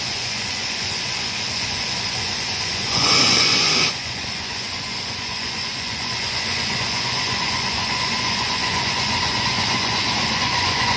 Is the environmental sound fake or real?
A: fake